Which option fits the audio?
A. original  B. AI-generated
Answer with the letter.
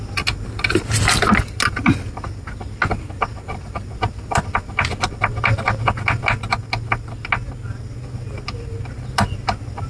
A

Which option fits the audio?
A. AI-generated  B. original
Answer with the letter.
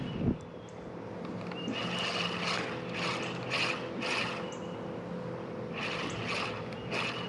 B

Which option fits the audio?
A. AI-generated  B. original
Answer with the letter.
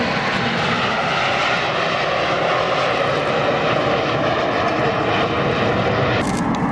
B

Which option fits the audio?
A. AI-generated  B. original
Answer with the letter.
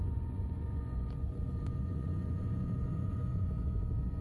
A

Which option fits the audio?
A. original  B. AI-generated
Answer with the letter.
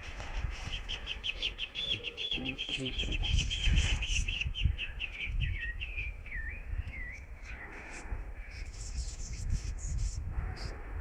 B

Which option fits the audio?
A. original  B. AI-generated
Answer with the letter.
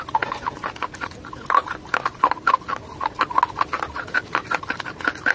A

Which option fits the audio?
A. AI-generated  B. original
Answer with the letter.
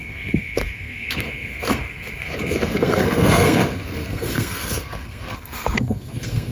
A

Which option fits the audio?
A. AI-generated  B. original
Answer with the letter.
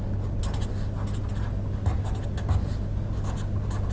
B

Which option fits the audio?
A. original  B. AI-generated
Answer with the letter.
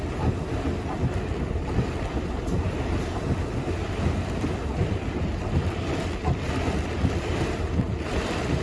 B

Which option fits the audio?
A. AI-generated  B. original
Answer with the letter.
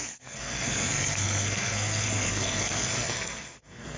A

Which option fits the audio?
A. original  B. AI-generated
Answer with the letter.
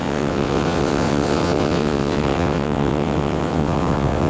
B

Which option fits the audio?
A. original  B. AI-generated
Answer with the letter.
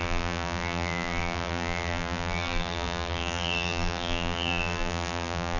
B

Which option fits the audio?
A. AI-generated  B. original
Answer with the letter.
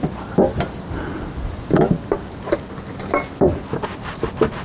B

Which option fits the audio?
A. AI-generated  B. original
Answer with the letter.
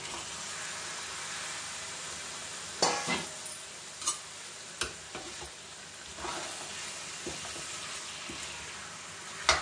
B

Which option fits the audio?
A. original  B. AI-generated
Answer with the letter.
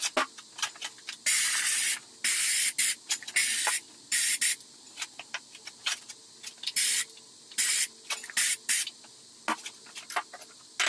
A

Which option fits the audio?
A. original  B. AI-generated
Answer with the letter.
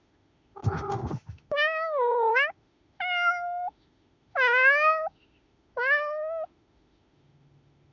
B